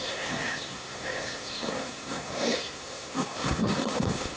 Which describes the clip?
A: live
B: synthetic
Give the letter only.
B